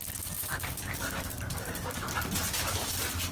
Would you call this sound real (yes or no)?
yes